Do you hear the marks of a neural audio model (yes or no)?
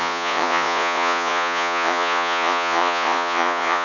yes